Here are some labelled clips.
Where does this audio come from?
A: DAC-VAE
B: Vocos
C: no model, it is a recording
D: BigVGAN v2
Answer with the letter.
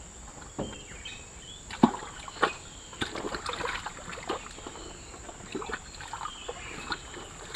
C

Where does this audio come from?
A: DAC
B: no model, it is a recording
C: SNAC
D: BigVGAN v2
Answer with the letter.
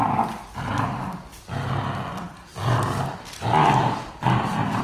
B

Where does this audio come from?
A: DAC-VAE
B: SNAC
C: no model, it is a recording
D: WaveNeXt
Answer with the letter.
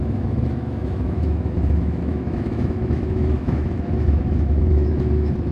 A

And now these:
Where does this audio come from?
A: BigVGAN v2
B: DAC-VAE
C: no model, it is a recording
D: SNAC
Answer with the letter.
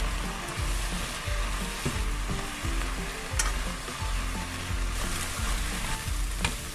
C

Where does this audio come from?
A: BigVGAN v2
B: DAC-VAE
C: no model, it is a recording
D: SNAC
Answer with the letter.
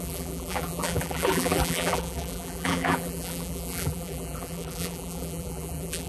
A